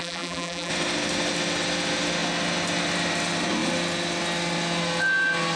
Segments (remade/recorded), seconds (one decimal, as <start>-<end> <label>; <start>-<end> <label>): 0.0-0.7 remade; 0.7-5.6 recorded